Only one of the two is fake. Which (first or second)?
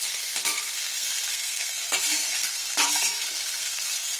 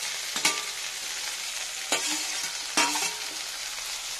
first